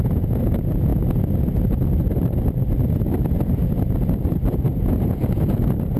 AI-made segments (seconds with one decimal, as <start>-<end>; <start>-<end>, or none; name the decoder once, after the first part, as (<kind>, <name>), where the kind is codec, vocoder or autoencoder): 0.0-0.9 (vocoder, Vocos); 4.5-6.0